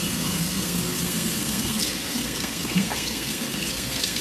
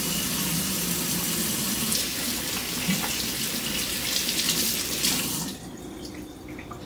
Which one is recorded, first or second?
second